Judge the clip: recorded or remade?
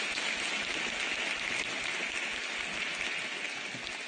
recorded